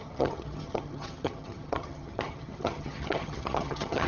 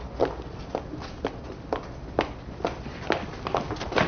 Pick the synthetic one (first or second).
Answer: first